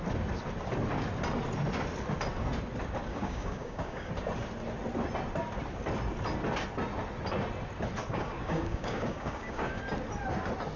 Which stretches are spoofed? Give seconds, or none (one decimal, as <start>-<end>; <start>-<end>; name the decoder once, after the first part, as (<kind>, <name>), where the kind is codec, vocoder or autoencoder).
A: 3.1-4.1 (codec, DAC); 8.1-9.8